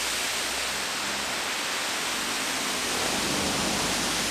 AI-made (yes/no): no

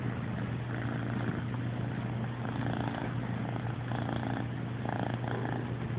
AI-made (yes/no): no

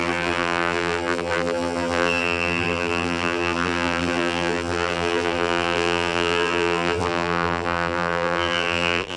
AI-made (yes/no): yes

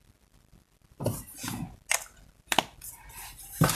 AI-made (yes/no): no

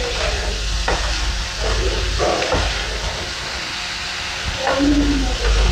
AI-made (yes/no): no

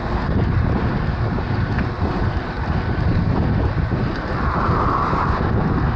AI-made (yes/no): no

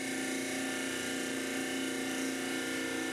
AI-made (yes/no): no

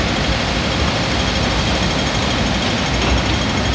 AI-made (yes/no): no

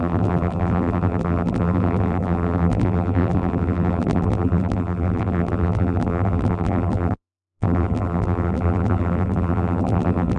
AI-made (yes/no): yes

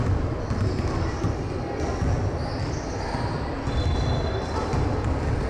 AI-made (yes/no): no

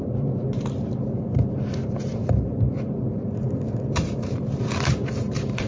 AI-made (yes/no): yes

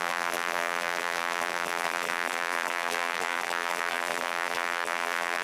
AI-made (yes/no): yes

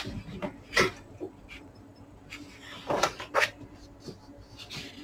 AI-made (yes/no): yes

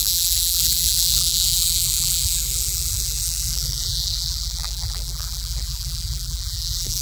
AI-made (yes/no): yes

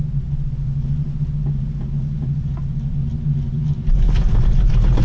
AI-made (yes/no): no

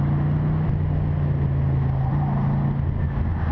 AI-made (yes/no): no